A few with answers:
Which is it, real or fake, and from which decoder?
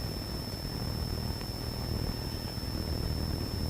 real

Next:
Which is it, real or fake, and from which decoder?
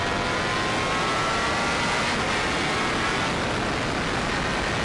real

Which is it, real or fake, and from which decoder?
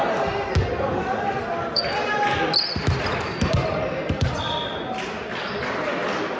real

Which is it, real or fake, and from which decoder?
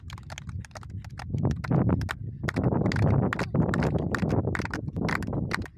real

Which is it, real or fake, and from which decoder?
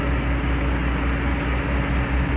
real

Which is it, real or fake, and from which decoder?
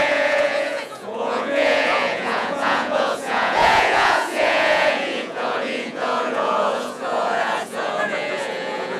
fake, vocoder, Vocos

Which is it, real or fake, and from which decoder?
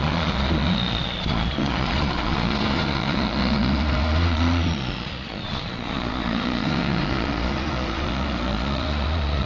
fake, vocoder, Vocos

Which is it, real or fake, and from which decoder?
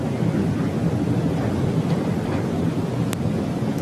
real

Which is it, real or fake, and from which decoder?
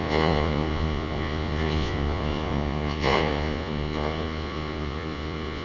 fake, vocoder, Vocos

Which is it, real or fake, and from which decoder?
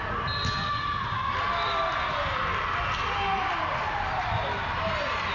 real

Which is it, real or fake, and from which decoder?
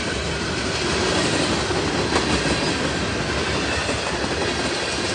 real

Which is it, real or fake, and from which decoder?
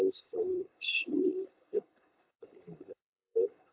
fake, codec, HILCodec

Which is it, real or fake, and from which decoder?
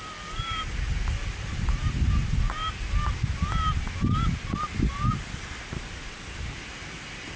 real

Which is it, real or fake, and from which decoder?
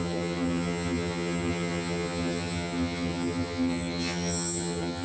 fake, vocoder, HiFi-GAN